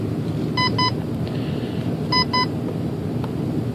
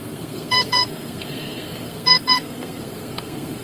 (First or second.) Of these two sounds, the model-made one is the second